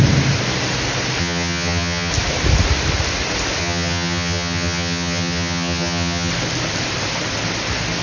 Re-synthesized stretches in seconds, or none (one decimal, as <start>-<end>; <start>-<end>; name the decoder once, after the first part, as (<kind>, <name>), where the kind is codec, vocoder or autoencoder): 1.2-2.1 (vocoder, HiFi-GAN); 3.6-6.3